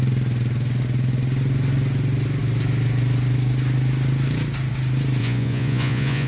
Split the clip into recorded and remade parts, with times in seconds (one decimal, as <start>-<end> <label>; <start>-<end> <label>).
0.0-5.2 recorded; 5.2-6.3 remade